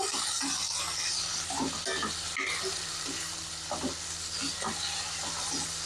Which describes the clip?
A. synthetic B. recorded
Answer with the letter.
B